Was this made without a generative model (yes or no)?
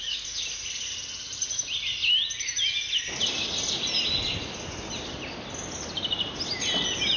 yes